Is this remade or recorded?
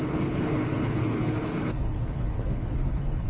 remade